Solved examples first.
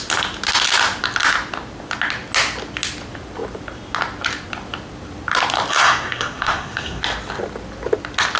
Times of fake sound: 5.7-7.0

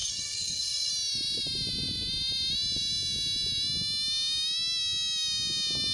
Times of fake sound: 0.0-0.9

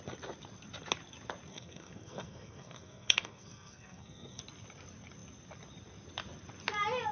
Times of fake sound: 1.5-4.4